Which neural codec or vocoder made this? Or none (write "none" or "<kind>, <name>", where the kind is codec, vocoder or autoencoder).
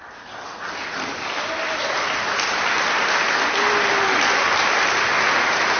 none